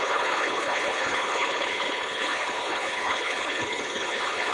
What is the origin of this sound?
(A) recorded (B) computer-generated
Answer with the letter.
B